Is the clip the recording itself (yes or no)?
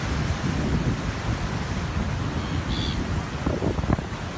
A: yes